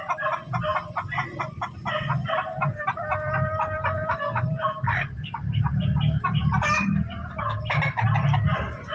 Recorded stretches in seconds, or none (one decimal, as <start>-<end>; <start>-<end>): 0.0-0.7; 1.4-8.9